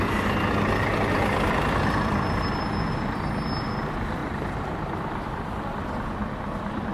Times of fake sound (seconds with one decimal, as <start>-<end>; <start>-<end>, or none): 4.2-5.6